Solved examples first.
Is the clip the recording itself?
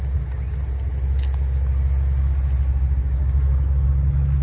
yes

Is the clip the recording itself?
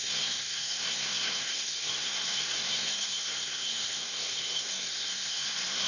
no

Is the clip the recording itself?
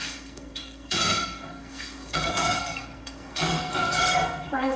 no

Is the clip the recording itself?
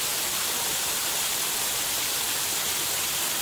yes